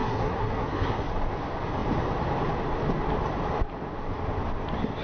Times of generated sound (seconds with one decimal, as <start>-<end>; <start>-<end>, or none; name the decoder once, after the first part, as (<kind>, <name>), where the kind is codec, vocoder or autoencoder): 0.0-1.1 (codec, SNAC)

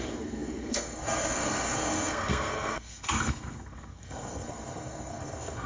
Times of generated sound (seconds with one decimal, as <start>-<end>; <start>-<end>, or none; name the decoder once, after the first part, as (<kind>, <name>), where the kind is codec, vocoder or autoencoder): 0.0-5.7 (codec, SNAC)

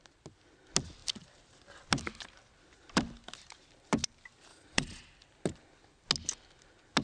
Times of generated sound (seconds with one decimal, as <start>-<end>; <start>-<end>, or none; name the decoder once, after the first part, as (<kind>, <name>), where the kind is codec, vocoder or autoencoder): 4.5-5.1 (vocoder, Vocos)

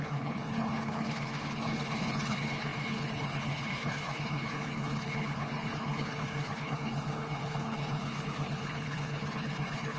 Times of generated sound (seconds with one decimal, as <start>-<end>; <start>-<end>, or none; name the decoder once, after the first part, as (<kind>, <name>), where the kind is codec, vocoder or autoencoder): 0.0-10.0 (codec, HILCodec)

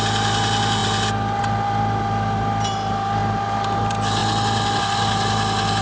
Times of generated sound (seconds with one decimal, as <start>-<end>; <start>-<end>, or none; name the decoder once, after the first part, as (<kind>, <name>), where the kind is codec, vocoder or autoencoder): none